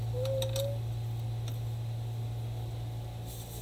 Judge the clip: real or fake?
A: real